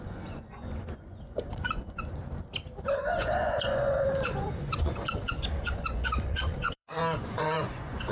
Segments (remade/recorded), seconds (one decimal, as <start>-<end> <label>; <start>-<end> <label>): 0.0-2.2 remade; 2.2-2.9 recorded; 2.9-8.1 remade